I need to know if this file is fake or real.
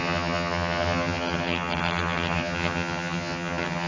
fake